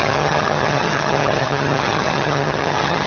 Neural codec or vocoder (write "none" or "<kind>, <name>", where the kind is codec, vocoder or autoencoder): vocoder, HiFi-GAN